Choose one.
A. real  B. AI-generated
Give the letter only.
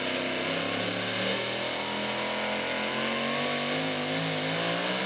A